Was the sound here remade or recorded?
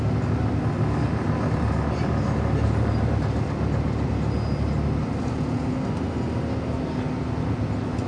recorded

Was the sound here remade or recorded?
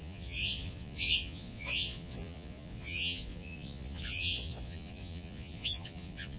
remade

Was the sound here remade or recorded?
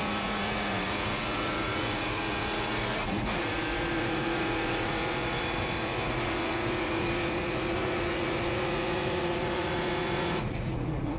remade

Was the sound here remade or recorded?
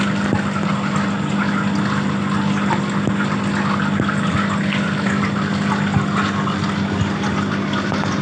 recorded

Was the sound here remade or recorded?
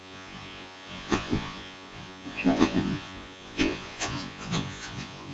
remade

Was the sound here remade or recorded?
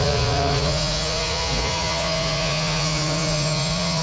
remade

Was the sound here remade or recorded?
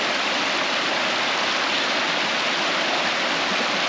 recorded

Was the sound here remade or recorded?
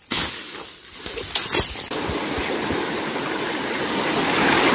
recorded